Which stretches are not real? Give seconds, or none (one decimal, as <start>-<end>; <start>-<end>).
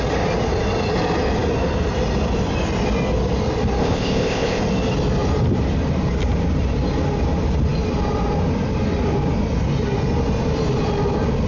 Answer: 3.8-4.6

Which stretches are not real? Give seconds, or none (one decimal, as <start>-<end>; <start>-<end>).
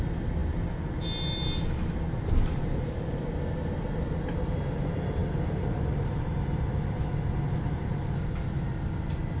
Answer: none